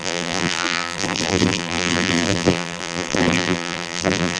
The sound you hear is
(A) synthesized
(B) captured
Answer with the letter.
A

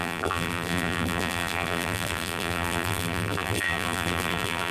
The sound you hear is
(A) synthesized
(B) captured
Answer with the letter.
A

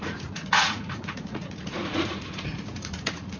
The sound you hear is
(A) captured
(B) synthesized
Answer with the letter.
B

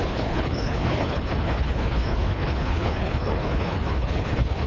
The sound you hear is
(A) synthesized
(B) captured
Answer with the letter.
A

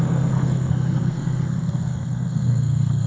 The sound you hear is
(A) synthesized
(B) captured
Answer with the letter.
A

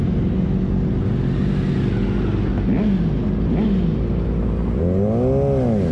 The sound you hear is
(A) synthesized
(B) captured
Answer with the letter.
B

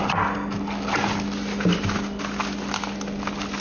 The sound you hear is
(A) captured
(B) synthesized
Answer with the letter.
A